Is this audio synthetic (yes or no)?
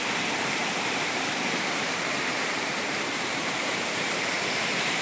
yes